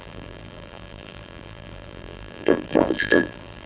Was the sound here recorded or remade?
remade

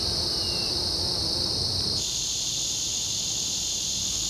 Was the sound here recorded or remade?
recorded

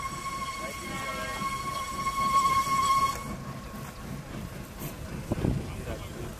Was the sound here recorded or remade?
recorded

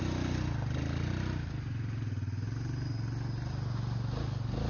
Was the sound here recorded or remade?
recorded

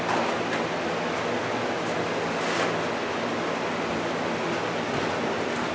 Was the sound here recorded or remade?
recorded